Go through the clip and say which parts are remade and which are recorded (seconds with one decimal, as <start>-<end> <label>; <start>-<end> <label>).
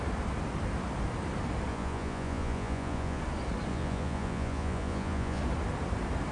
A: 0.0-1.7 recorded; 1.7-3.2 remade; 3.2-3.7 recorded; 3.7-5.4 remade; 5.4-6.3 recorded